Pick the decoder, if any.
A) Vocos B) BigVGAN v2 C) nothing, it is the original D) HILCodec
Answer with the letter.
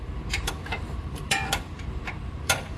B